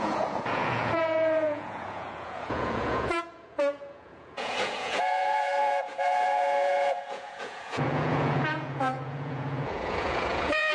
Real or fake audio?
fake